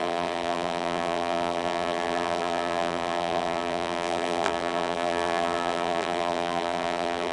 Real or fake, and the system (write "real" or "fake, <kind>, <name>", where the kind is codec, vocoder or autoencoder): fake, vocoder, BigVGAN v2